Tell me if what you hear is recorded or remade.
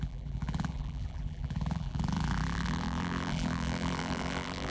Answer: remade